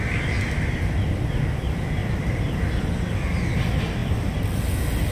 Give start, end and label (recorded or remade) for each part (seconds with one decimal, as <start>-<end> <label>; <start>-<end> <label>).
0.0-2.0 recorded; 2.0-2.6 remade; 2.6-5.1 recorded